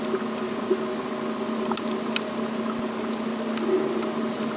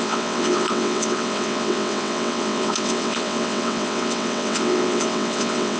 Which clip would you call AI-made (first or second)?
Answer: second